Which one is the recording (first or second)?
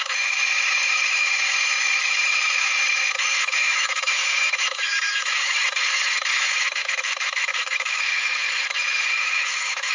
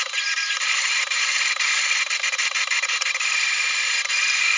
second